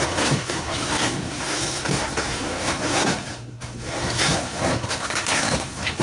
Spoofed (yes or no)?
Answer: yes